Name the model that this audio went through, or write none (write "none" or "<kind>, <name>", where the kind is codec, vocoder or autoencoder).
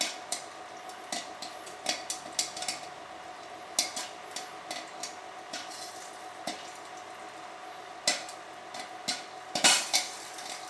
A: none